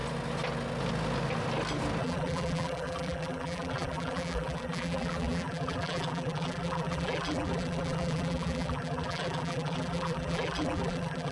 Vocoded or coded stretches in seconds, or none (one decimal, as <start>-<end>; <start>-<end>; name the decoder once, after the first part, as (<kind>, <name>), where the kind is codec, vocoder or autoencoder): 2.0-11.3 (vocoder, BigVGAN v2)